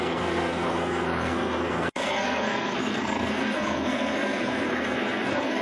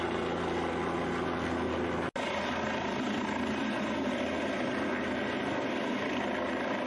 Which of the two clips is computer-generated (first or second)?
first